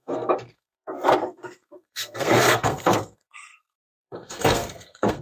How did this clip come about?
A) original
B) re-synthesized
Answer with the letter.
B